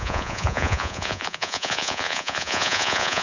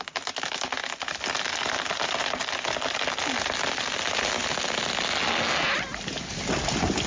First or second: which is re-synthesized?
first